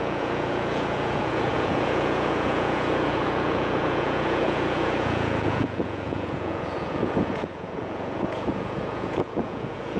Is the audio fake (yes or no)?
yes